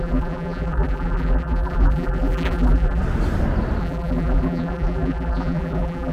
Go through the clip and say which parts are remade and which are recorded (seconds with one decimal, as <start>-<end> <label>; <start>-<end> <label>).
0.0-3.0 remade; 3.0-3.8 recorded; 3.8-6.1 remade